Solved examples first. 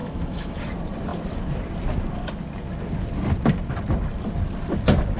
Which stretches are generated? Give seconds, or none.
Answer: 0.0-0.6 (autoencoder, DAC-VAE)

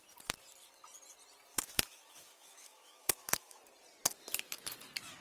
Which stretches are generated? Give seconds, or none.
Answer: 1.5-3.6 (autoencoder, DAC-VAE)

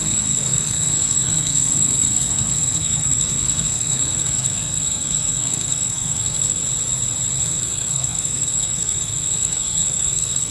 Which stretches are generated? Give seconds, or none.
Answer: 0.0-6.6 (codec, SNAC); 7.4-10.5

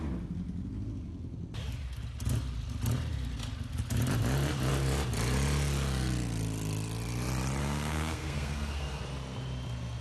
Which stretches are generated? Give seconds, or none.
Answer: 7.6-9.0 (codec, SNAC)

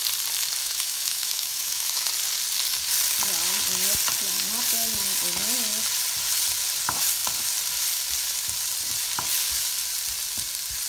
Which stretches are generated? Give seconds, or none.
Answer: 0.6-2.1 (autoencoder, DAC-VAE)

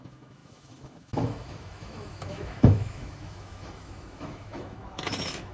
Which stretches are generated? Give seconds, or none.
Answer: 0.0-5.5 (autoencoder, DAC-VAE)

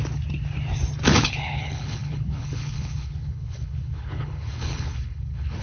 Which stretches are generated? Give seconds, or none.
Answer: 1.2-5.6 (codec, HILCodec)

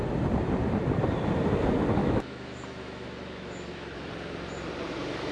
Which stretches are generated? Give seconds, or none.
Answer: 2.0-4.1 (autoencoder, DAC-VAE)